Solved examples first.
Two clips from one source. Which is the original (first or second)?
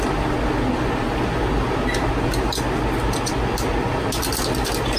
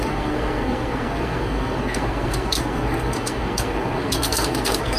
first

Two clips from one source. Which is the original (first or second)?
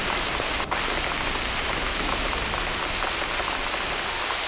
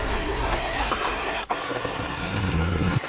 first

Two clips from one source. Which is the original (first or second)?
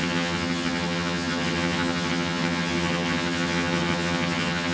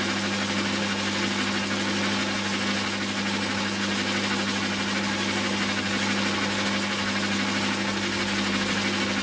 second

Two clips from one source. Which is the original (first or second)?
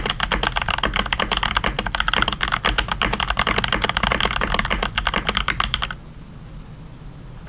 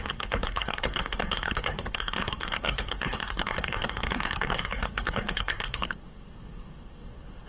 first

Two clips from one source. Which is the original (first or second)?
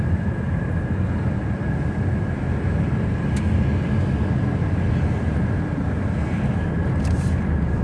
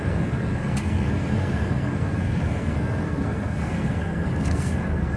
first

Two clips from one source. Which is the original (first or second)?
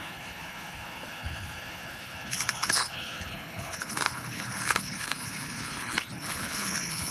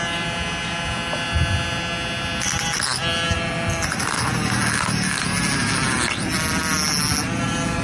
second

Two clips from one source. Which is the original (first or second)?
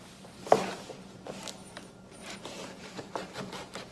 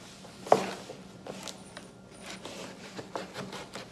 second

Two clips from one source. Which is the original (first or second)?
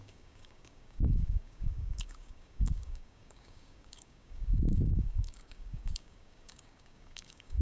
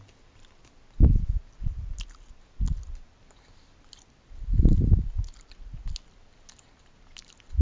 second